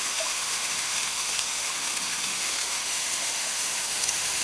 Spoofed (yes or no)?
yes